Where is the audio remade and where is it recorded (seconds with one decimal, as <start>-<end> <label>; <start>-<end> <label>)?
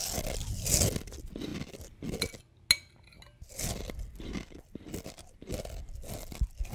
0.0-6.7 recorded